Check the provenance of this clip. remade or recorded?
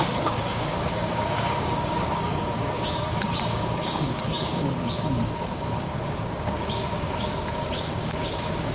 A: remade